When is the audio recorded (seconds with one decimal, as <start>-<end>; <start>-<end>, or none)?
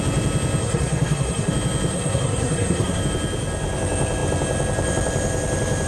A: 0.0-0.6; 1.5-1.9; 3.0-5.9